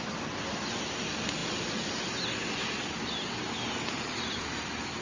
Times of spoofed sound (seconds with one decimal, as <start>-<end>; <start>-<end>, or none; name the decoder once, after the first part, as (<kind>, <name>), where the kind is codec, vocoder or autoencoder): none